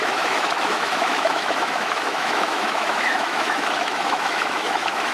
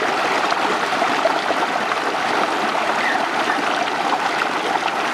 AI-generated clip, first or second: first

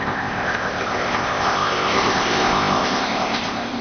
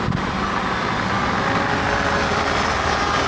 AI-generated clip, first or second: first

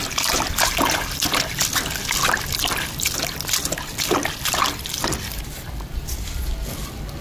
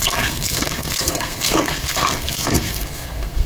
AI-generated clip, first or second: second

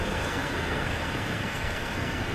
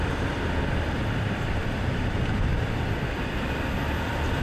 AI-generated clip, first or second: first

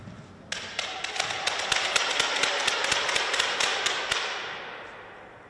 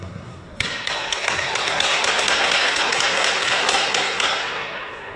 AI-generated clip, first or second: second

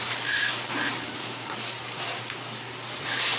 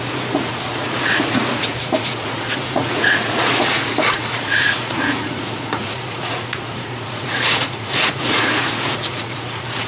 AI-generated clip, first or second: second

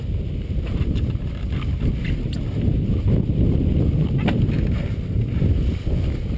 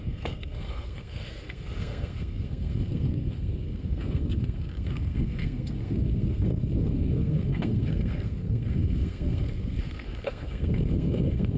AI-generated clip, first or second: second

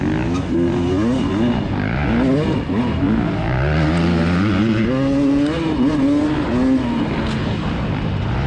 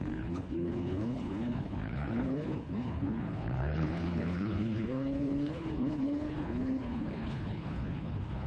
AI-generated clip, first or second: second